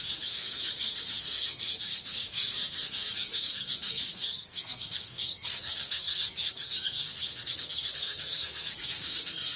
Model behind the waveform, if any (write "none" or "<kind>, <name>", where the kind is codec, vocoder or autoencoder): codec, SNAC